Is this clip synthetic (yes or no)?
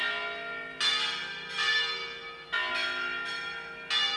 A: no